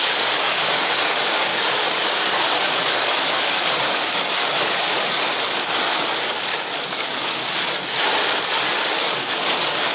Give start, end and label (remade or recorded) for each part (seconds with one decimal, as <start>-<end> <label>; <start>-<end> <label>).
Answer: 0.0-7.4 remade; 7.4-8.4 recorded; 8.4-9.9 remade